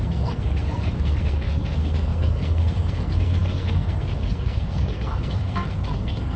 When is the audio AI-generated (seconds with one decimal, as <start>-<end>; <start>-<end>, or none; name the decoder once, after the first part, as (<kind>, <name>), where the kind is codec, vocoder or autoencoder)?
0.0-6.4 (codec, SNAC)